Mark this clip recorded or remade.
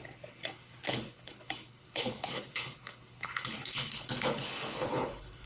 remade